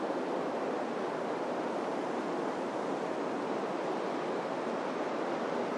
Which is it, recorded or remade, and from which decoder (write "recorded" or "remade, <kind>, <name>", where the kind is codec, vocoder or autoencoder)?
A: recorded